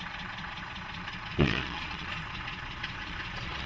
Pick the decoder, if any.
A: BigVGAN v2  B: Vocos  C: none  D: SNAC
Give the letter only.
B